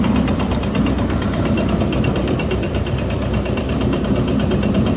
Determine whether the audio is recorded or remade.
remade